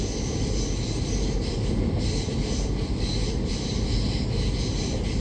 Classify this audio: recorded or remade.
recorded